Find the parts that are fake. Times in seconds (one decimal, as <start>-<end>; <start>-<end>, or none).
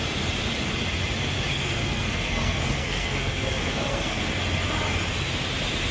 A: 1.5-4.2